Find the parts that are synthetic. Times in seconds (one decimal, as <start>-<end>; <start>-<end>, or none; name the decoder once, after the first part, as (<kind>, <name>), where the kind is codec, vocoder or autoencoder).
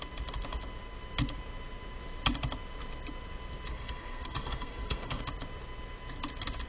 3.7-5.2 (codec, SNAC)